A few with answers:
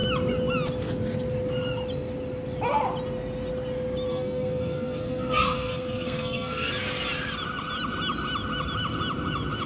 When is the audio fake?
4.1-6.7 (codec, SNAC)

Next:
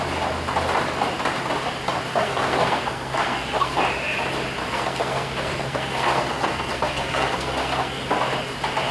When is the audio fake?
2.1-3.8 (codec, SNAC); 4.6-8.1

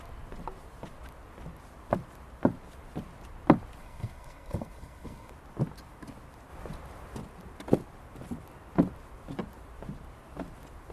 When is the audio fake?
3.8-5.3 (codec, SNAC)

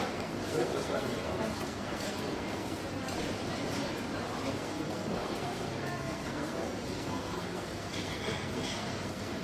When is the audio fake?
0.0-2.8 (codec, SNAC); 4.5-9.4

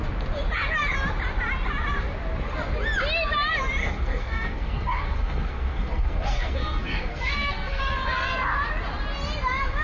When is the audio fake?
3.8-7.8 (codec, SNAC)

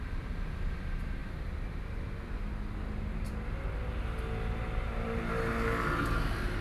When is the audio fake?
none

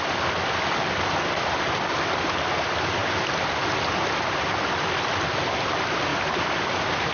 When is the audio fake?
none

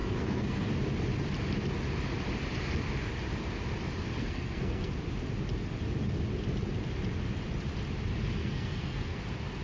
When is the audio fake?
0.0-0.7 (codec, SNAC); 4.2-4.9; 8.4-9.2